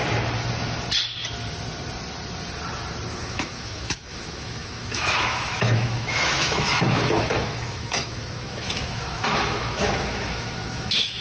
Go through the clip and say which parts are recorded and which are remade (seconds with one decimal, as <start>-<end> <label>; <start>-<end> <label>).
0.0-3.1 recorded; 3.1-11.2 remade